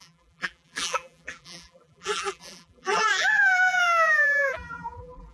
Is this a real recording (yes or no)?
no